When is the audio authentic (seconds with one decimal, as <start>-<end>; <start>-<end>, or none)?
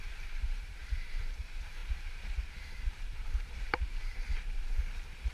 none